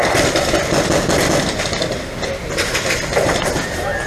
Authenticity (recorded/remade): recorded